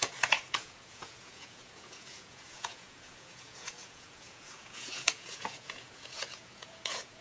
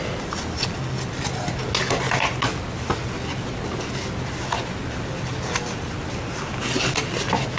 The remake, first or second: first